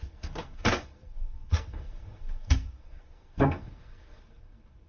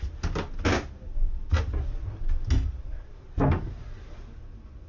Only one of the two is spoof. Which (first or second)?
first